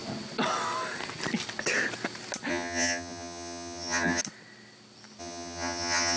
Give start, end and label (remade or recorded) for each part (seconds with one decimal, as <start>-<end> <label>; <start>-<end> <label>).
0.0-2.5 recorded; 2.5-4.2 remade; 4.2-5.2 recorded; 5.2-6.2 remade